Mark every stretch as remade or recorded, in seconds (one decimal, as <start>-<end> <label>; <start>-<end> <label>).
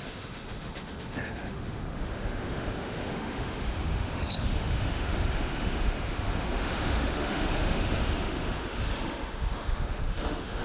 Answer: 0.0-10.6 remade